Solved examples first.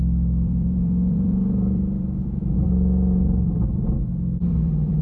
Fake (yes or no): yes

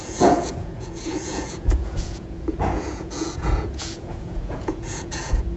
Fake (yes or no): yes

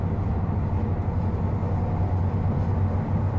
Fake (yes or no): no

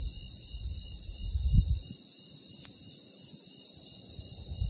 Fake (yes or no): no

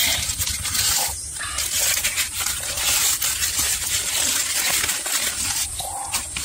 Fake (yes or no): no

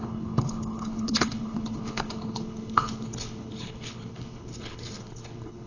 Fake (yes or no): yes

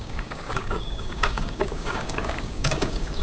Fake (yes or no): yes